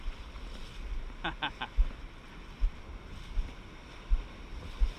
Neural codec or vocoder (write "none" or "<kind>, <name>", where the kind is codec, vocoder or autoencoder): none